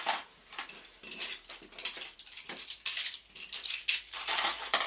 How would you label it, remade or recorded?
recorded